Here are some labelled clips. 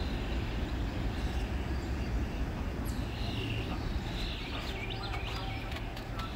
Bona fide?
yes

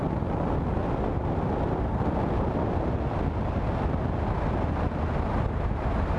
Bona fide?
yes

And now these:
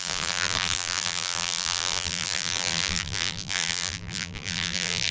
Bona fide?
no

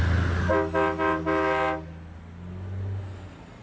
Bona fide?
yes